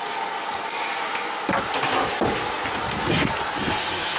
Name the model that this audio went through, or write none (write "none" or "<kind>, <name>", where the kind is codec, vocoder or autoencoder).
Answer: none